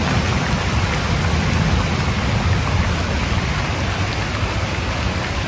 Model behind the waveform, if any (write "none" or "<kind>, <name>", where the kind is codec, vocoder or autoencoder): none